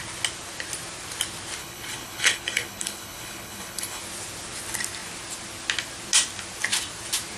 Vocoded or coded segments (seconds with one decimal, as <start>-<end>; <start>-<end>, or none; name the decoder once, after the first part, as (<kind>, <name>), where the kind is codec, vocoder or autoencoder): 1.6-4.0 (codec, HILCodec)